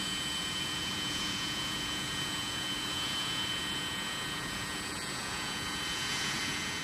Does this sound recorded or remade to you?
remade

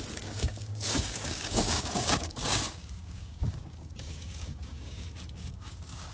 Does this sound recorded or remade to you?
remade